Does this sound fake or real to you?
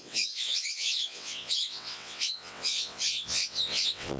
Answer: fake